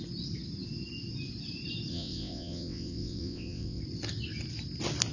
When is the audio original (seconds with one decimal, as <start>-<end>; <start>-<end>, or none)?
0.0-1.9; 3.8-5.1